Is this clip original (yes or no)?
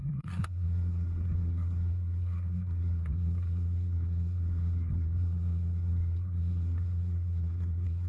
no